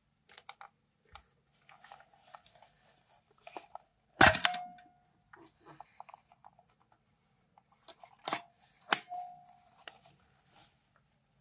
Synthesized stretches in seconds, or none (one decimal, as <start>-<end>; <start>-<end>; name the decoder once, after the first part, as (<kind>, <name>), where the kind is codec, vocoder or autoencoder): none